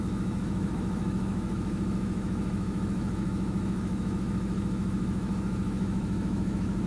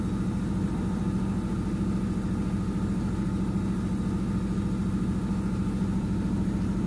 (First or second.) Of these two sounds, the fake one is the first